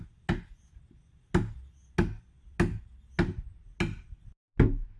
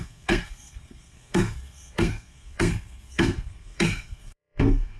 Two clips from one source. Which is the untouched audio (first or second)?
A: first